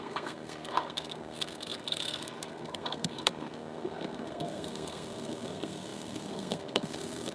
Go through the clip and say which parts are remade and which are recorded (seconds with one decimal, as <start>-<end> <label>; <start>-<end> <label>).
0.0-7.3 remade